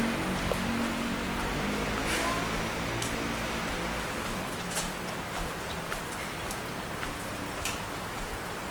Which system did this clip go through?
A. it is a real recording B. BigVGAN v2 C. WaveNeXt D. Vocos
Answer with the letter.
A